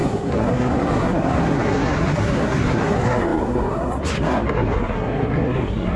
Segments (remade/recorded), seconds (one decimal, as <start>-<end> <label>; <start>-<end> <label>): 0.0-6.0 remade